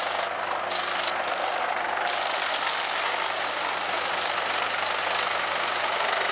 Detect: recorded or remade recorded